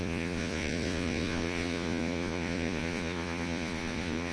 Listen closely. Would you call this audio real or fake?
fake